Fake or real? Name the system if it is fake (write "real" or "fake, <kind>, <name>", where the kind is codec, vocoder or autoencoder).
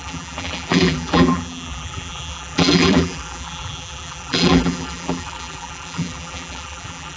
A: fake, vocoder, BigVGAN v2